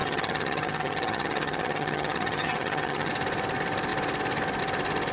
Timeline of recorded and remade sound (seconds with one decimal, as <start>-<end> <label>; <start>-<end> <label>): 0.0-3.1 remade; 3.1-5.1 recorded